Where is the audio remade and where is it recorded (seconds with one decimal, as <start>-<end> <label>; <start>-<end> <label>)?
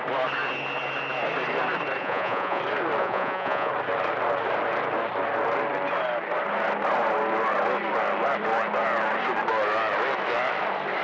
0.0-2.0 recorded; 2.0-2.6 remade; 2.6-3.0 recorded; 3.0-3.7 remade; 3.7-11.0 recorded